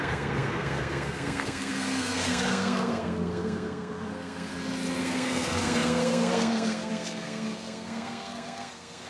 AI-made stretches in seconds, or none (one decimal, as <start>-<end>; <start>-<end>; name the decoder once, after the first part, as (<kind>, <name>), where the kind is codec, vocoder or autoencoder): 0.0-4.5 (codec, SNAC); 5.0-9.1